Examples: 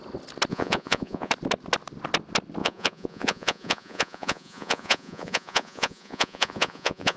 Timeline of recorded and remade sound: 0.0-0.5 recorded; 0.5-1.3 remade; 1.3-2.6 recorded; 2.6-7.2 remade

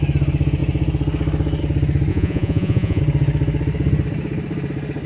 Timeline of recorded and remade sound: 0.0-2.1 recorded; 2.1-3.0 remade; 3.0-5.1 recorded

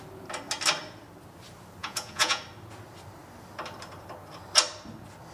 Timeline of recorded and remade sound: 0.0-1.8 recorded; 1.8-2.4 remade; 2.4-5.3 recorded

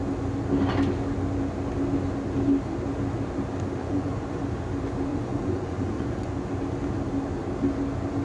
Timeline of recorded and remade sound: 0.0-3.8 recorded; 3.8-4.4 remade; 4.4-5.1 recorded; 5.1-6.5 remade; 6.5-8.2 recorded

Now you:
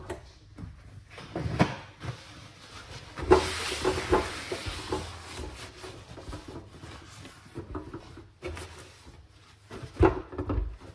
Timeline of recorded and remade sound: 0.0-10.9 recorded

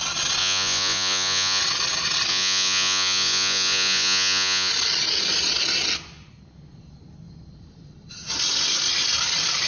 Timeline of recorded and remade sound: 0.0-0.4 recorded; 0.4-1.6 remade; 1.6-2.3 recorded; 2.3-4.7 remade; 4.7-9.7 recorded